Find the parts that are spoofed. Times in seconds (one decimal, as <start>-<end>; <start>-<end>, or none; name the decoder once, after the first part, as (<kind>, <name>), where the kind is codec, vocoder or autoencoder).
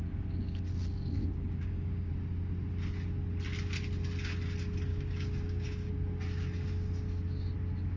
1.2-2.1 (codec, DAC); 4.9-5.9